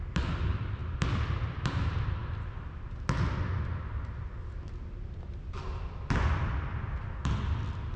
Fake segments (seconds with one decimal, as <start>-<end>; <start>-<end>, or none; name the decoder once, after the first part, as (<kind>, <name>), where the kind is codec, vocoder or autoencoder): 0.0-2.2 (vocoder, BigVGAN v2); 5.8-8.0

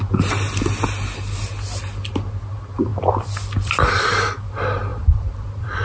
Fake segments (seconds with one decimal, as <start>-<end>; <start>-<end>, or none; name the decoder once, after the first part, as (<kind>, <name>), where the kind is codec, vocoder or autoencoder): 2.9-4.0 (vocoder, BigVGAN v2); 4.9-5.8